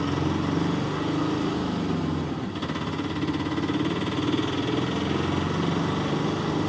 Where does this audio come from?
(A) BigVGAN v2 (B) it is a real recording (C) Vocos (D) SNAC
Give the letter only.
B